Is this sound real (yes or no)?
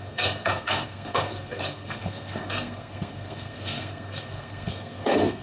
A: no